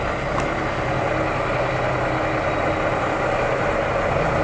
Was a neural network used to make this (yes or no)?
no